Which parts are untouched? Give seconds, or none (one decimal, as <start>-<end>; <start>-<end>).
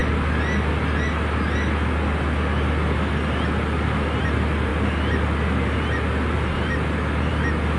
0.0-7.8